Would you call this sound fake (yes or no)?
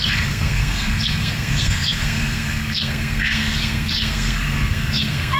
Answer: yes